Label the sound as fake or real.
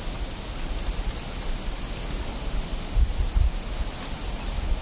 real